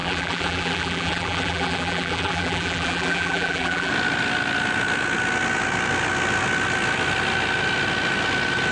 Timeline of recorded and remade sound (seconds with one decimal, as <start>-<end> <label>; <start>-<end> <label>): 0.0-3.9 remade; 3.9-8.7 recorded